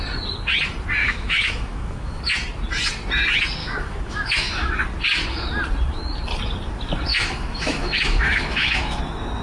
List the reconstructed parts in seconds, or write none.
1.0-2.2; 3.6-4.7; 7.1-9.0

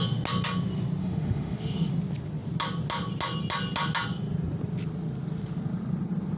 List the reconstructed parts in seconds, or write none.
1.0-1.9

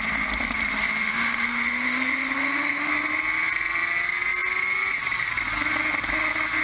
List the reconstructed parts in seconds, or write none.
1.0-2.9

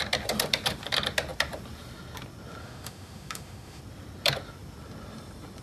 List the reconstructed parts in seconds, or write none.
2.6-3.8

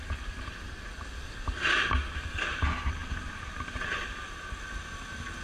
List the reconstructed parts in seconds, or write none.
none

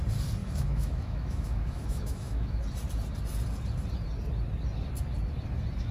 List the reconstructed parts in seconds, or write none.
0.4-2.6

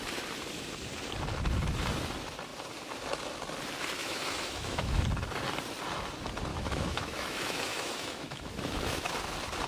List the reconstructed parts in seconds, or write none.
4.0-5.0; 6.5-9.1

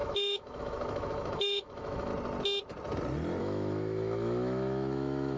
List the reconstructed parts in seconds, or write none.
0.0-2.1; 3.4-5.4